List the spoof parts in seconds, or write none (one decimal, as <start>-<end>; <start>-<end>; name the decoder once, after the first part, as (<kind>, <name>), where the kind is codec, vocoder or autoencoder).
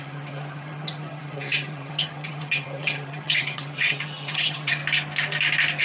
0.0-4.8 (vocoder, HiFi-GAN)